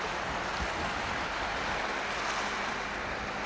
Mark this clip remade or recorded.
recorded